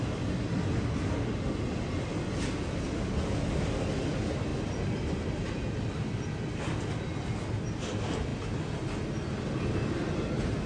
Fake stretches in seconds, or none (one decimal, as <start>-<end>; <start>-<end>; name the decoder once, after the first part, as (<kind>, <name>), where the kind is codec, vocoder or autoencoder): none